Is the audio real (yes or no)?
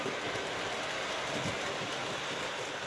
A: yes